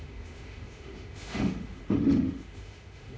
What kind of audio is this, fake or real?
fake